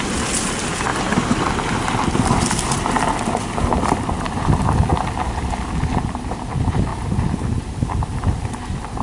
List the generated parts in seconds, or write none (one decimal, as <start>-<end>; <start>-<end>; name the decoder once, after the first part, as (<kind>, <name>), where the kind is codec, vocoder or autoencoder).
0.0-0.9 (vocoder, BigVGAN v2); 2.1-4.9; 5.9-9.0